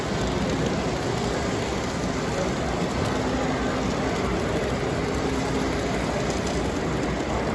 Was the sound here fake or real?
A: real